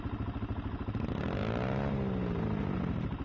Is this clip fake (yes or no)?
no